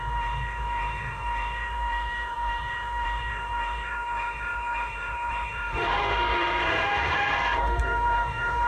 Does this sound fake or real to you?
fake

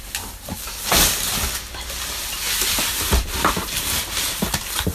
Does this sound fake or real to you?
real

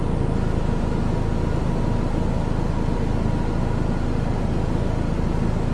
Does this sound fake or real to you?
real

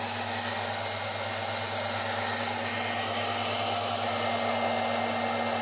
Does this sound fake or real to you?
real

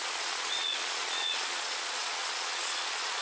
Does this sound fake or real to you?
fake